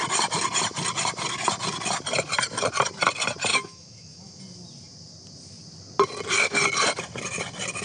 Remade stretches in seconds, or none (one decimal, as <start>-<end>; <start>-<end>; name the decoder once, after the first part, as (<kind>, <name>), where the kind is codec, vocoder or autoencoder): 3.5-4.4 (autoencoder, DAC-VAE)